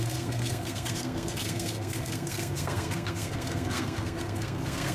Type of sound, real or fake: fake